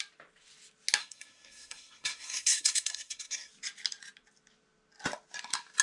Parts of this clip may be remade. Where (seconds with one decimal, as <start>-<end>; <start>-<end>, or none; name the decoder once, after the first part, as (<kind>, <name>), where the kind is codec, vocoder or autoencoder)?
1.0-3.5 (codec, SNAC)